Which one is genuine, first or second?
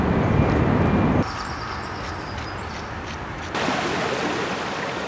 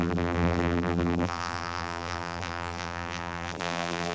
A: first